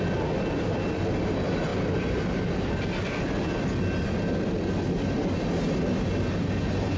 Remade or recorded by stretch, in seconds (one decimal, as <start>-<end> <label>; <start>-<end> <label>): 0.0-7.0 recorded